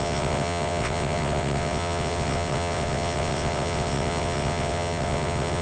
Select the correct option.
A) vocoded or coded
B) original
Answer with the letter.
A